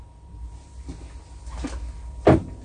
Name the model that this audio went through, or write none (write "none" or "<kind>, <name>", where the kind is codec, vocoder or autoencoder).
none